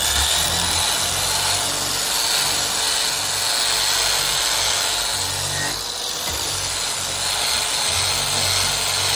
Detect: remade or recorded recorded